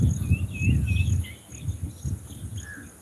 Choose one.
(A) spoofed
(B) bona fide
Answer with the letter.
B